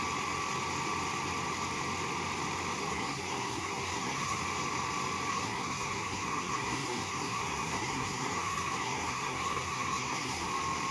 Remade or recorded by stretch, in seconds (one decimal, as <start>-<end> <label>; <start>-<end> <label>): 0.0-2.8 recorded; 2.8-4.4 remade; 4.4-5.3 recorded; 5.3-10.5 remade; 10.5-10.9 recorded